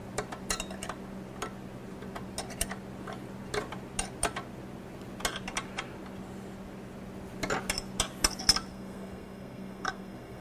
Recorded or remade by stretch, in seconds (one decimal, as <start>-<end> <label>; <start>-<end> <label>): 0.0-8.7 recorded; 8.7-10.4 remade